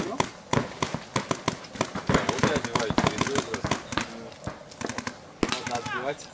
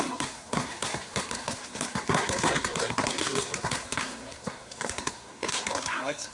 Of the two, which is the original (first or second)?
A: first